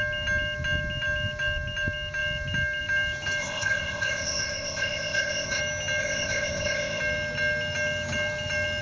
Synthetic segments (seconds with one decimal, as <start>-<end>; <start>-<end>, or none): 3.4-5.6; 6.0-7.0